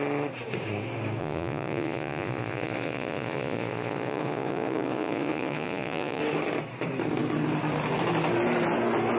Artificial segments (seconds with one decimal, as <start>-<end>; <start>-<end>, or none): 1.2-6.2